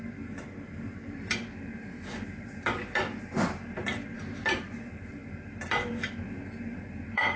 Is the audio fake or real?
fake